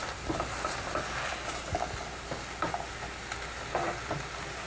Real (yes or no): yes